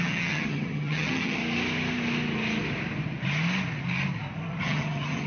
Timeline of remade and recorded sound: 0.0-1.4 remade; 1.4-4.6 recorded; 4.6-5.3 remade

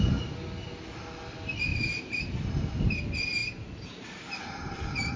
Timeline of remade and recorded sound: 0.0-1.7 recorded; 1.7-2.4 remade; 2.4-3.4 recorded; 3.4-4.4 remade; 4.4-5.2 recorded

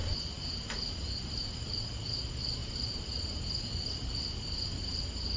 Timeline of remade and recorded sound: 0.0-5.4 remade